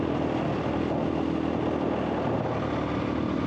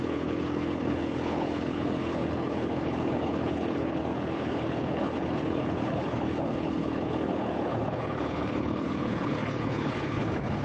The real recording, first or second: first